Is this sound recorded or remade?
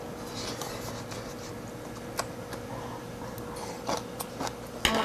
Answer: recorded